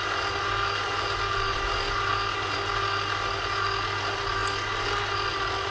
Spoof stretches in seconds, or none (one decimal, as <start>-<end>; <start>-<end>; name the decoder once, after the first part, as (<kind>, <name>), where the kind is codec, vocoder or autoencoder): none